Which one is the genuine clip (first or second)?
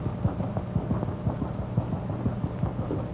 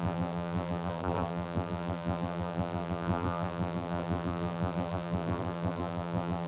first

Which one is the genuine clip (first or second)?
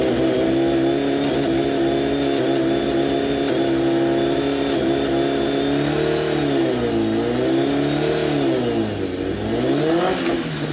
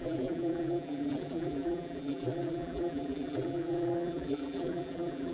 first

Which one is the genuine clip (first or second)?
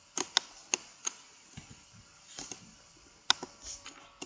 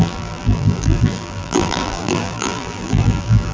first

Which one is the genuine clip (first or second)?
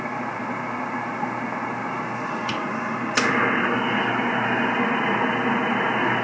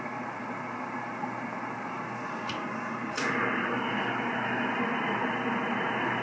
first